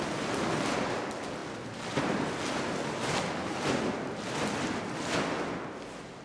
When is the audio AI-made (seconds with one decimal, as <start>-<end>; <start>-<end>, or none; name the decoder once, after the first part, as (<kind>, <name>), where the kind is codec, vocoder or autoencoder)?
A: none